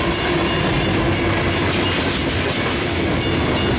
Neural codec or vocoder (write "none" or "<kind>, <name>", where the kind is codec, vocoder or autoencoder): none